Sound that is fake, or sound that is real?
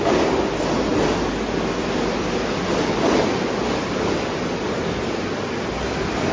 real